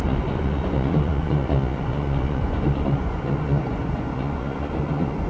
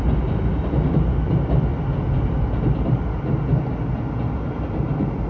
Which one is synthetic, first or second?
first